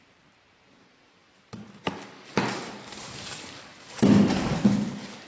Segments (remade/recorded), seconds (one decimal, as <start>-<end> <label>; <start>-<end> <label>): 0.0-1.2 remade; 1.2-2.7 recorded; 2.7-3.7 remade; 3.7-4.3 recorded; 4.3-5.3 remade

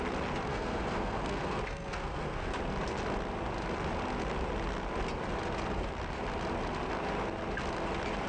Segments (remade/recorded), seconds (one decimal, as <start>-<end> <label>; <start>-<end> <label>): 0.0-0.5 recorded; 0.5-2.5 remade; 2.5-8.3 recorded